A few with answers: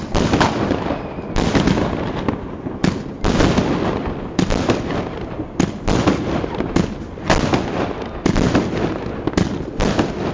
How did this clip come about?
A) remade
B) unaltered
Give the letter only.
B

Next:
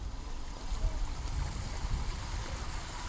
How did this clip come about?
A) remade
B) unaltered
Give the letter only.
B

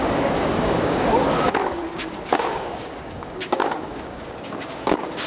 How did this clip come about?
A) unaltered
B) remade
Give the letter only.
B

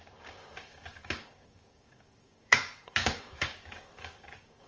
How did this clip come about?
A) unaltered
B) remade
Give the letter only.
B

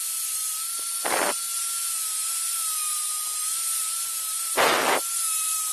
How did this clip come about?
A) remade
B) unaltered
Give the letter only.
B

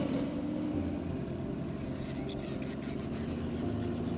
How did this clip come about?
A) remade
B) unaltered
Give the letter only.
B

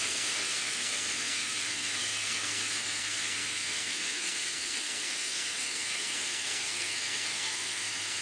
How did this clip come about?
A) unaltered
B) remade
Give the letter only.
B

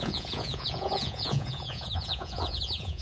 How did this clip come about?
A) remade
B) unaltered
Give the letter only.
A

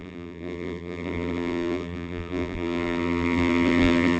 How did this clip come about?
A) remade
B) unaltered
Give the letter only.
A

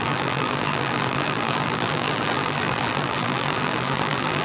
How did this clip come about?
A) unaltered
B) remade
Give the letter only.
B